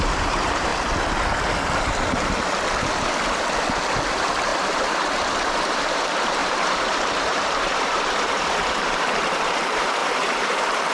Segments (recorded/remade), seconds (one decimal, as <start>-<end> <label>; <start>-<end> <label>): 0.0-0.7 remade; 0.7-4.1 recorded; 4.1-10.9 remade